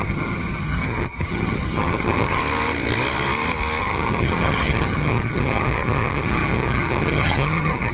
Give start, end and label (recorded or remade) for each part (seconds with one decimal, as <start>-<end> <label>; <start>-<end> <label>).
0.0-2.4 remade; 2.4-3.8 recorded; 3.8-7.9 remade